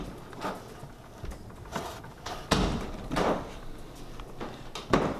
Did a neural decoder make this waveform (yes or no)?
no